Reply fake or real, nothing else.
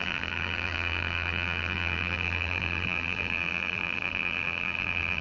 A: fake